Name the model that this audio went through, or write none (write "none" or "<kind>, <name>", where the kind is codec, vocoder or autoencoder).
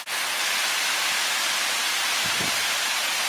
none